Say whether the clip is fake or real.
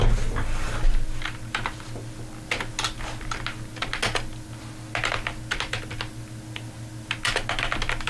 real